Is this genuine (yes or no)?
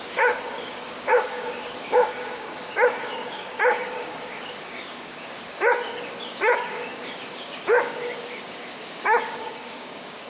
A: no